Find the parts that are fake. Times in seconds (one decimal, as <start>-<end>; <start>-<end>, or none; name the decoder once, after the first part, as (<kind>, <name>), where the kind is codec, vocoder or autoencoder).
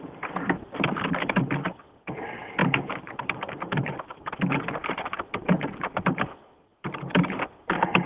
2.6-6.2 (vocoder, BigVGAN v2); 6.7-8.1